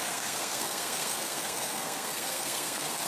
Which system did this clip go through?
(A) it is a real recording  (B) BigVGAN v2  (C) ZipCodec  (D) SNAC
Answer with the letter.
D